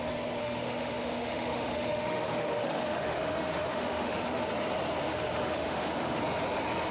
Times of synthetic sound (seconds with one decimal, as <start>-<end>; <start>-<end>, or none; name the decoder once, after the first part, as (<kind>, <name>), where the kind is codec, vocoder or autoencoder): 0.4-4.5 (autoencoder, DAC-VAE); 5.1-6.2